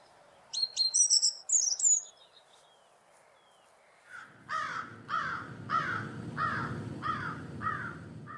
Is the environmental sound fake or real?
real